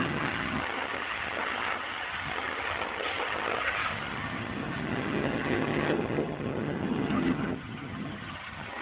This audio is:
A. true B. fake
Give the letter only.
B